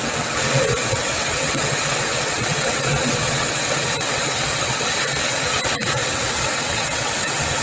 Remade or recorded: remade